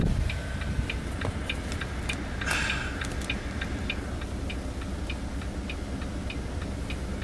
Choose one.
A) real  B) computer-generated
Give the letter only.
A